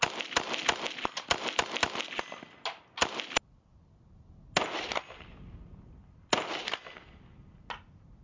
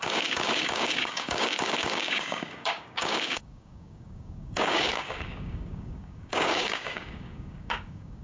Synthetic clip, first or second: second